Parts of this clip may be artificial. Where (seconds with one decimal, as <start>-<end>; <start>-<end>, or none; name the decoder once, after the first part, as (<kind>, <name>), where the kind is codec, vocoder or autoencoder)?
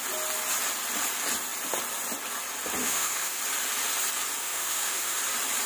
2.8-3.4 (autoencoder, DAC-VAE); 4.4-5.2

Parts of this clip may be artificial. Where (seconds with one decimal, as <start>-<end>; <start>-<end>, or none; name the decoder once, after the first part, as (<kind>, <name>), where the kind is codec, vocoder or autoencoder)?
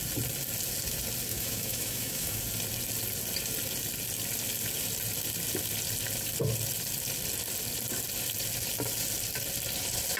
1.3-2.4 (autoencoder, DAC-VAE)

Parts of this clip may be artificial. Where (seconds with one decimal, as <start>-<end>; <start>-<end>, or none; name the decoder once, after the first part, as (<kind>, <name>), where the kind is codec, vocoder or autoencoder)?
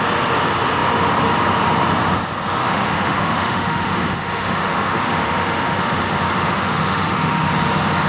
2.6-7.5 (autoencoder, DAC-VAE)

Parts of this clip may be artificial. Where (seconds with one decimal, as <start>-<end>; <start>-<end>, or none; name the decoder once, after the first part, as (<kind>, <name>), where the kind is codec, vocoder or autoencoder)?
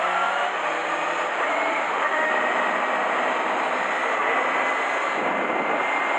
1.7-2.3 (autoencoder, DAC-VAE)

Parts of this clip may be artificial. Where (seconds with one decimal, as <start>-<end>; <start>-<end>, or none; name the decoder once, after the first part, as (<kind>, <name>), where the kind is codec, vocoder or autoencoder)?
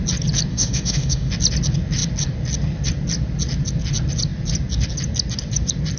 0.5-1.3 (autoencoder, DAC-VAE)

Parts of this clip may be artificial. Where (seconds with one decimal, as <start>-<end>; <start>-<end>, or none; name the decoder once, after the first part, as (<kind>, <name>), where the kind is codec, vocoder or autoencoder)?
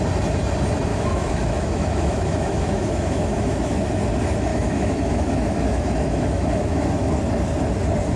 0.9-3.9 (autoencoder, DAC-VAE); 4.5-7.1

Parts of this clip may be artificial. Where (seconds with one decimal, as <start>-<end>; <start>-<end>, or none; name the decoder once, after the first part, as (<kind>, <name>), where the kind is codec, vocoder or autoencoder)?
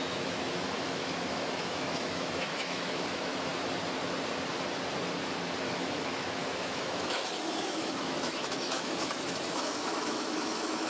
0.0-3.5 (autoencoder, DAC-VAE); 5.7-10.9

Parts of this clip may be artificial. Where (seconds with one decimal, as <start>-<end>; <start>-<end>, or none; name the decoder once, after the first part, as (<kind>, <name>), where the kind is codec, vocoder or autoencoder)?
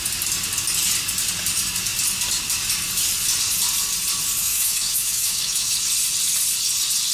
4.4-5.7 (autoencoder, DAC-VAE)